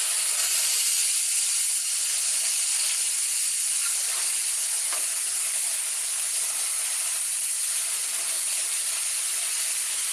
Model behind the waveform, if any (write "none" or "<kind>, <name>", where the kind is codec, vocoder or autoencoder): none